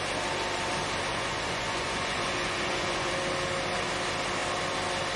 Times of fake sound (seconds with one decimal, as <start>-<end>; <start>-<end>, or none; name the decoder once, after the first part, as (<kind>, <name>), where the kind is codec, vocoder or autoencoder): 1.1-3.1 (vocoder, Vocos)